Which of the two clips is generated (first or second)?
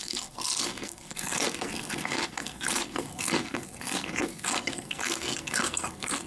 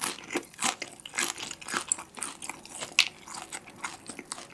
first